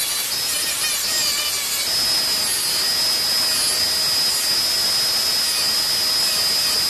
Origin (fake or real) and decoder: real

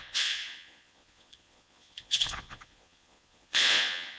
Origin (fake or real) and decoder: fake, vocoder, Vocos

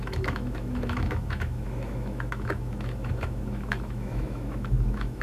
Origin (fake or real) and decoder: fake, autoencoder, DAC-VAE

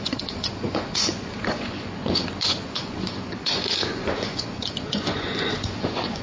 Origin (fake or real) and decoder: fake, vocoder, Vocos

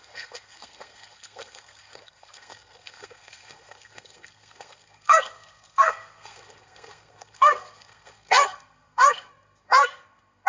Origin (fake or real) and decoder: fake, codec, SNAC